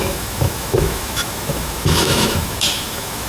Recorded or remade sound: remade